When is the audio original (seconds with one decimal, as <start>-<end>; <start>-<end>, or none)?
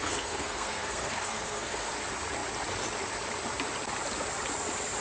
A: 1.9-5.0